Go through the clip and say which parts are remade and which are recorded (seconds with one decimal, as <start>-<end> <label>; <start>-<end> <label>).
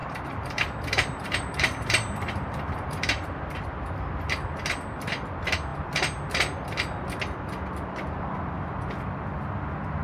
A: 0.0-3.5 remade; 3.5-10.0 recorded